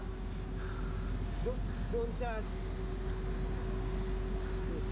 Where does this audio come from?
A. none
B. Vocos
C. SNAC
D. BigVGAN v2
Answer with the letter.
A